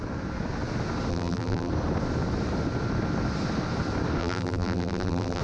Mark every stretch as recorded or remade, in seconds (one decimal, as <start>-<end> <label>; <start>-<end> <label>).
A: 0.0-1.1 recorded; 1.1-1.7 remade; 1.7-4.2 recorded; 4.2-5.4 remade